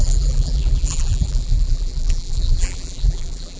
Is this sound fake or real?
fake